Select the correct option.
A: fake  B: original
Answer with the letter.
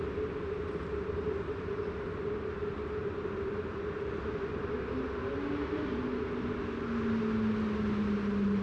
B